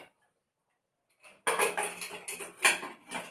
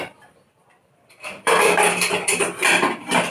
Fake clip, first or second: second